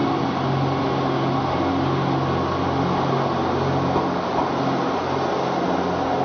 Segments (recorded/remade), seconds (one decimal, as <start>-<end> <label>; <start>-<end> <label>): 0.0-6.2 recorded